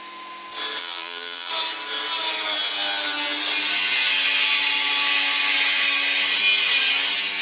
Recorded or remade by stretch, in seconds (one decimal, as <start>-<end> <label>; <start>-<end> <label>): 0.0-0.8 recorded; 0.8-1.5 remade; 1.5-7.4 recorded